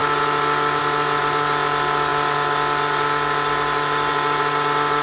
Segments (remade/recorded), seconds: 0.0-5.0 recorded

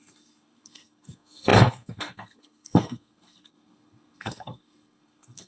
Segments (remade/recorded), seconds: 0.0-5.5 remade

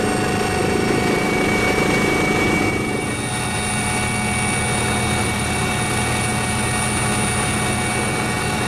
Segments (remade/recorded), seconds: 0.0-0.6 recorded; 0.6-3.1 remade; 3.1-5.2 recorded; 5.2-5.7 remade; 5.7-8.7 recorded

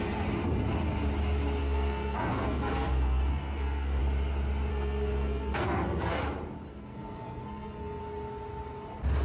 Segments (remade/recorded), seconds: 0.0-1.6 recorded; 1.6-4.0 remade; 4.0-4.7 recorded; 4.7-6.2 remade; 6.2-6.7 recorded; 6.7-8.0 remade; 8.0-9.2 recorded

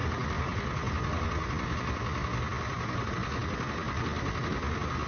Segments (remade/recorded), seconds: 0.0-5.1 recorded